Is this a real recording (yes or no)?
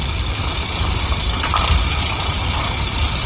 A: yes